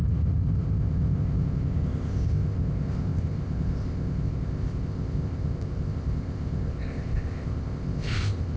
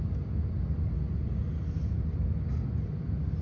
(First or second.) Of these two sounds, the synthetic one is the first